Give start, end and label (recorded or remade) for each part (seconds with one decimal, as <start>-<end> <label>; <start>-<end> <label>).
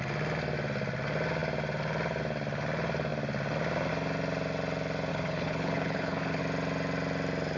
0.0-5.1 recorded; 5.1-6.4 remade; 6.4-7.6 recorded